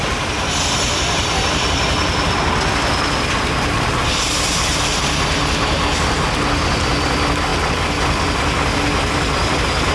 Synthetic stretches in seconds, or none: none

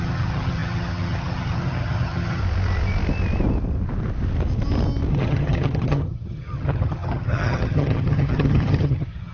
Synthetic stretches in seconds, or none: 0.0-2.4; 5.1-9.3